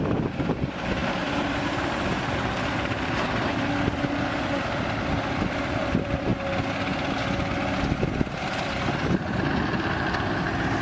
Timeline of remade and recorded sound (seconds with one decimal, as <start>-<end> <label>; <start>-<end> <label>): 0.0-6.3 remade; 6.3-8.4 recorded; 8.4-10.8 remade